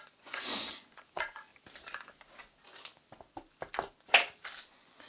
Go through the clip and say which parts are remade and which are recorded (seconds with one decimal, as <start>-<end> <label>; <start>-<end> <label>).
0.0-1.5 remade; 1.5-4.6 recorded; 4.6-5.1 remade